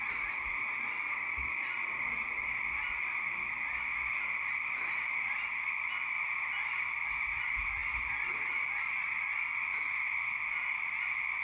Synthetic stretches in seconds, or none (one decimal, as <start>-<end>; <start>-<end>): none